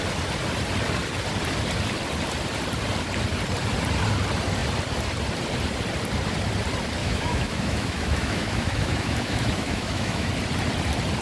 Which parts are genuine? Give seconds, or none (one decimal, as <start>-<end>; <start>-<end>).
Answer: 0.0-7.0; 10.3-11.2